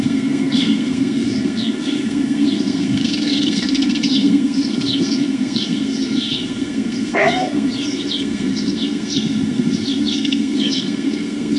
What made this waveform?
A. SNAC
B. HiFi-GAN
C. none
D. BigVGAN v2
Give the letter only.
A